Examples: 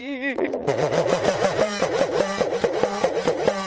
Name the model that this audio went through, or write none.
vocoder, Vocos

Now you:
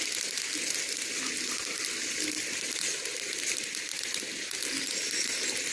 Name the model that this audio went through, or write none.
none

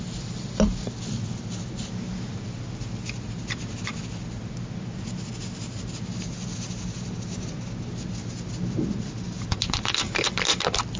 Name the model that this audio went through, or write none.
none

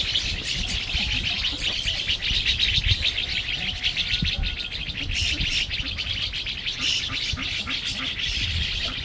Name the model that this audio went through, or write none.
none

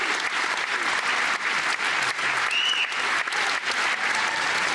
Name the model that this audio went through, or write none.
none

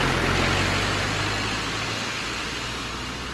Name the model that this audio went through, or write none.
none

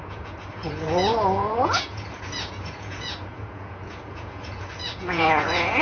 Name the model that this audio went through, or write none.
vocoder, Vocos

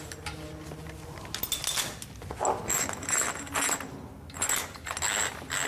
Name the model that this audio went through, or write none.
none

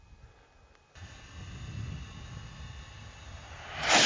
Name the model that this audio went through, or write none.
none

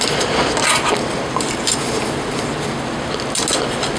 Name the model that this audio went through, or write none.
none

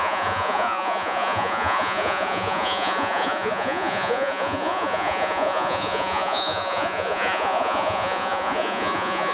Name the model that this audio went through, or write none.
vocoder, Vocos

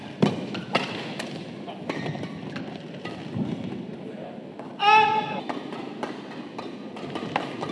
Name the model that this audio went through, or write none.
none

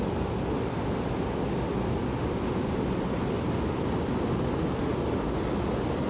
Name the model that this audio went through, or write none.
none